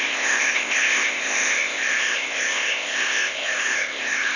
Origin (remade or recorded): remade